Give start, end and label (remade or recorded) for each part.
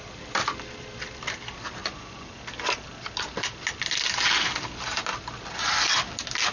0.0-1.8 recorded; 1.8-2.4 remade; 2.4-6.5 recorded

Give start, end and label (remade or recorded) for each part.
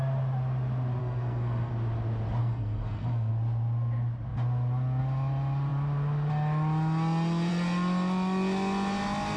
0.0-1.0 recorded; 1.0-1.7 remade; 1.7-2.4 recorded; 2.4-3.3 remade; 3.3-9.4 recorded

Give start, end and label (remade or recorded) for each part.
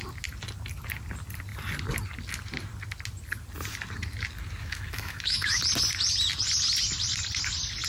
0.0-4.6 recorded; 4.6-5.6 remade; 5.6-7.9 recorded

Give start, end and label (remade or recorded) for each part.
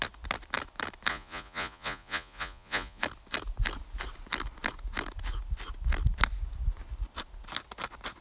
0.0-1.1 recorded; 1.1-3.0 remade; 3.0-8.2 recorded